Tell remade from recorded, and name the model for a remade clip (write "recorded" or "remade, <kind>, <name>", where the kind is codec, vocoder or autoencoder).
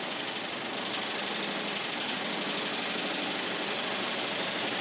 remade, vocoder, BigVGAN v2